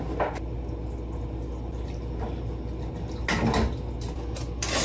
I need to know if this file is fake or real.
real